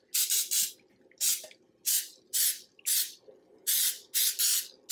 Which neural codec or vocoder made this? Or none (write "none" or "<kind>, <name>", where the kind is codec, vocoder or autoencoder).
none